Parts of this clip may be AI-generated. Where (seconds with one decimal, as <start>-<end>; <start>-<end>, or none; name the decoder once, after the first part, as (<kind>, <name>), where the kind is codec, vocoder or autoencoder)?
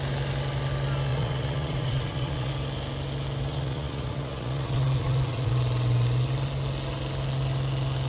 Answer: 1.1-2.5 (vocoder, Vocos); 3.5-5.5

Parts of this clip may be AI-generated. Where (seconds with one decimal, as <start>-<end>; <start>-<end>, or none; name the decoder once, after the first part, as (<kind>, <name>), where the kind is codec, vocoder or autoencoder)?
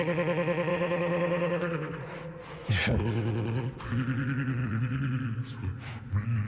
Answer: 0.7-2.7 (vocoder, Vocos); 4.6-5.2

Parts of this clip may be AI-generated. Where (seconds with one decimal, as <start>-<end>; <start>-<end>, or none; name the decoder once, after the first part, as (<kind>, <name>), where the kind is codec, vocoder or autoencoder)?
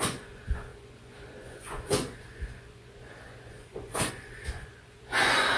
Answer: 0.0-5.6 (vocoder, Vocos)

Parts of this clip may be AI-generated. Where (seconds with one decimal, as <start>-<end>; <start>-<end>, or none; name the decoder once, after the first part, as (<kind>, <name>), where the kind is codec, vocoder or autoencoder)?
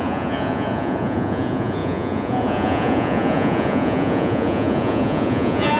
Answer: 0.0-5.8 (vocoder, Vocos)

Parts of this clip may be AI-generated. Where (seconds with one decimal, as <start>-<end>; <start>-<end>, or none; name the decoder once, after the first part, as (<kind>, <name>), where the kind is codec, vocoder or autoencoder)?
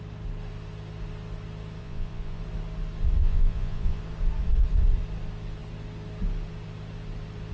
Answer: 1.8-2.4 (vocoder, Vocos); 3.2-4.0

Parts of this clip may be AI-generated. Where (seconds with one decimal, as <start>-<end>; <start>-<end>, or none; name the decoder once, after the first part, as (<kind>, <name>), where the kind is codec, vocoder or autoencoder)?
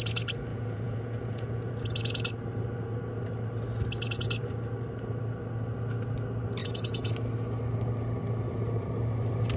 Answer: 0.5-1.7 (vocoder, Vocos); 6.6-7.1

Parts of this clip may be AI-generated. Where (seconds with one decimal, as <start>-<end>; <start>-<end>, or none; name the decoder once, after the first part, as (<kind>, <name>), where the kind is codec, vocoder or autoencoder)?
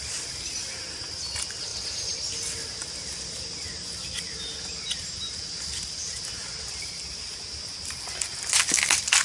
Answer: none